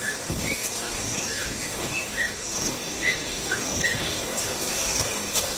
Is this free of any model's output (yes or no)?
no